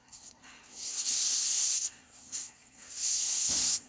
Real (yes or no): no